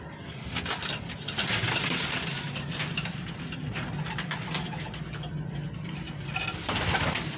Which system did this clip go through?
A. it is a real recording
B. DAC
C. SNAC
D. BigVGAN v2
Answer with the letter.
A